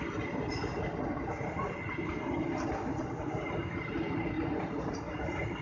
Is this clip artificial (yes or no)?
no